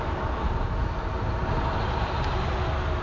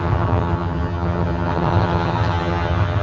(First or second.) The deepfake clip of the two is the second